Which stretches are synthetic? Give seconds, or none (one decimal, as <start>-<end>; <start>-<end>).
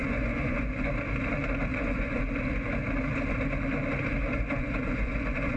0.0-0.9; 1.7-2.2; 4.2-5.6